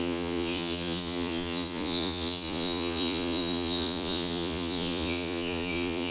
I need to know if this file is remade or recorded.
remade